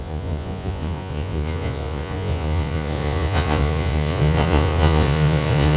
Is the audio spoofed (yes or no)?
yes